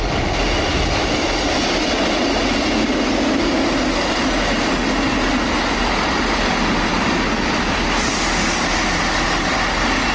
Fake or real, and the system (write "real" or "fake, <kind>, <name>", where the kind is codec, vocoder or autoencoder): real